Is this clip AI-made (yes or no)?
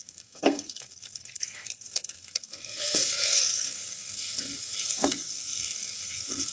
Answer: yes